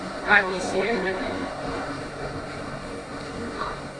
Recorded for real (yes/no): no